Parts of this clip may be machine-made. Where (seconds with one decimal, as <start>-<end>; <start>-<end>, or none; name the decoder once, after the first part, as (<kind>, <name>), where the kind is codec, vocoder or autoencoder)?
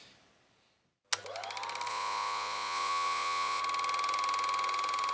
1.9-3.6 (vocoder, Vocos)